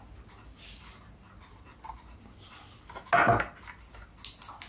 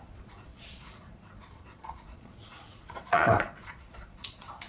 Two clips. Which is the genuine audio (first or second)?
first